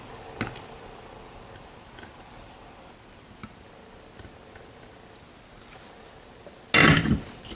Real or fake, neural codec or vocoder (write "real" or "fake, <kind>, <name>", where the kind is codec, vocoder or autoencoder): real